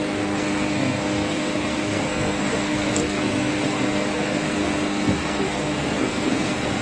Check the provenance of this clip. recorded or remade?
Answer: remade